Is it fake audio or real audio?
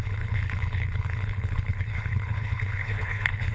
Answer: fake